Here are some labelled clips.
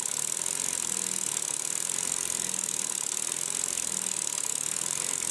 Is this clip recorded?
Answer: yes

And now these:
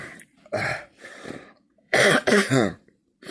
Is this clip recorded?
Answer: no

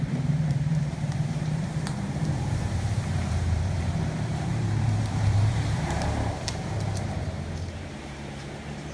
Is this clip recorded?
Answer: no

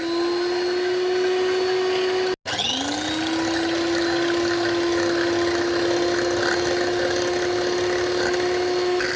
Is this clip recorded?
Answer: yes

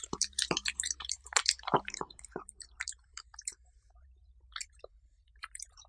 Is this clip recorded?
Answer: no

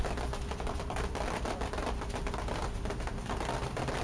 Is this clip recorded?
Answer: no